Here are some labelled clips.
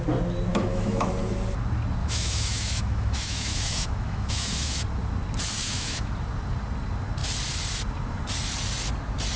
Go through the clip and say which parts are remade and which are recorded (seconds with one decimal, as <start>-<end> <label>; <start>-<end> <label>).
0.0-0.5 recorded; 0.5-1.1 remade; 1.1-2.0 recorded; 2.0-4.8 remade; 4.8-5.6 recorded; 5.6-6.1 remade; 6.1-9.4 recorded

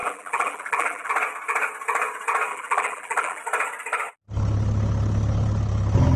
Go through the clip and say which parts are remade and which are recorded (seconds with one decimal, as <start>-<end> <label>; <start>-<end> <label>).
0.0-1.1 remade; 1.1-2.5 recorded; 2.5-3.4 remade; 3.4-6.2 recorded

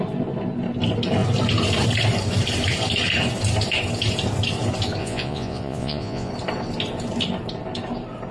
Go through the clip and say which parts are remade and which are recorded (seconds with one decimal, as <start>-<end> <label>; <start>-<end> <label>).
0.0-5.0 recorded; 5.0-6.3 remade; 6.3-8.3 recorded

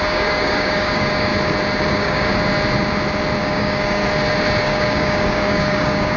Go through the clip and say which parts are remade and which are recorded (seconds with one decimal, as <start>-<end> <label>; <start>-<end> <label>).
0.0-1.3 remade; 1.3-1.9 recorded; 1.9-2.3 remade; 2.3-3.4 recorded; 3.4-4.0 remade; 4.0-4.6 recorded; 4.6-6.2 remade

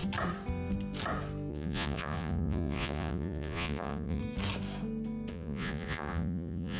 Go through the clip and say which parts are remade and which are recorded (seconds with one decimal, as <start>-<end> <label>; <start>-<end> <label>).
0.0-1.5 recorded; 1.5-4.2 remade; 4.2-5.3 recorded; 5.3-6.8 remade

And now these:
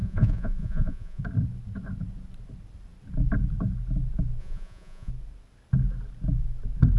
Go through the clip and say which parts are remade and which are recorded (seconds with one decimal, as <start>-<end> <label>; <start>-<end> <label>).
0.0-1.2 remade; 1.2-4.4 recorded; 4.4-5.1 remade; 5.1-7.0 recorded

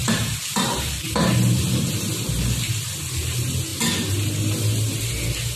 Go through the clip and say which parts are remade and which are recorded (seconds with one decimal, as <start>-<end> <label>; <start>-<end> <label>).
0.0-2.1 remade; 2.1-5.6 recorded

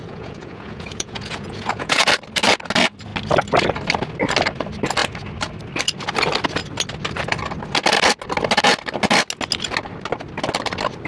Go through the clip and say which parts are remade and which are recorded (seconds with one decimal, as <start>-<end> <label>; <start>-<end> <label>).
0.0-2.1 remade; 2.1-11.1 recorded